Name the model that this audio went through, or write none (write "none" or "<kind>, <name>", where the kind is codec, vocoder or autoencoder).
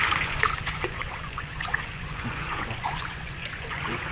vocoder, Vocos